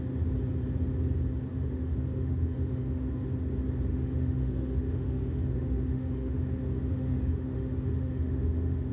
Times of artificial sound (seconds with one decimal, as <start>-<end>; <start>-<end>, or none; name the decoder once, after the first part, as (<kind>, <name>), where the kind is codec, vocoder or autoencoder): 1.5-3.1 (autoencoder, DAC-VAE); 3.9-8.9